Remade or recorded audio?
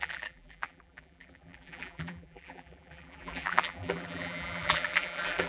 remade